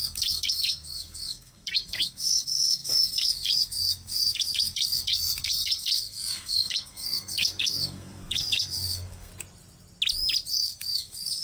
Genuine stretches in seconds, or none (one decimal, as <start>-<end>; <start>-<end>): 9.3-10.5

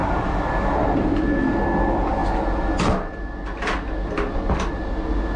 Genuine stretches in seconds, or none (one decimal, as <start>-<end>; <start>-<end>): 1.6-5.4

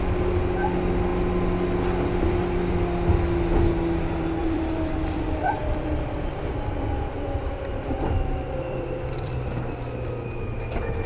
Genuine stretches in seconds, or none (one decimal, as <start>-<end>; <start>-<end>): 0.0-4.4; 9.3-11.1

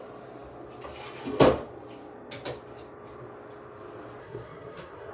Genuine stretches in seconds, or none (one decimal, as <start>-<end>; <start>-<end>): 0.0-4.2